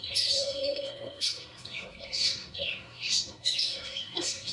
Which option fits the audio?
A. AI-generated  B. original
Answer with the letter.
A